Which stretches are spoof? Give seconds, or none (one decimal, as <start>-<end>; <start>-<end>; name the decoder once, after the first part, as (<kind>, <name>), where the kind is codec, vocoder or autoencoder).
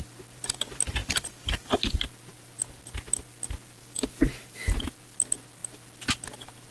1.0-1.7 (vocoder, BigVGAN v2); 3.8-4.8